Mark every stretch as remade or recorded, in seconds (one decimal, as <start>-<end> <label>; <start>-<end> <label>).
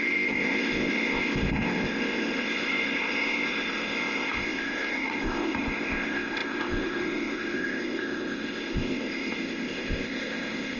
0.0-10.8 remade